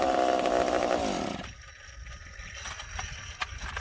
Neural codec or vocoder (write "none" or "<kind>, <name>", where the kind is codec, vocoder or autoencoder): none